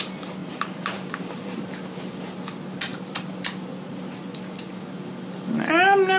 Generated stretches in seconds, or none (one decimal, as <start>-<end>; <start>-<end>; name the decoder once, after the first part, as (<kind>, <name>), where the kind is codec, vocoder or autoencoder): 0.4-1.7 (vocoder, BigVGAN v2)